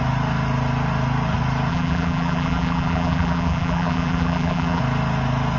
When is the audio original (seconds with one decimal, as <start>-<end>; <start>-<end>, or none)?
0.0-1.7; 4.8-5.6